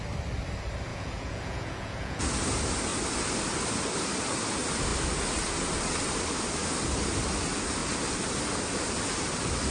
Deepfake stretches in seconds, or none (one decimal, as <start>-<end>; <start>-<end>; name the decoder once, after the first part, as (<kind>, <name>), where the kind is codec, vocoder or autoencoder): 0.9-2.2 (vocoder, Vocos)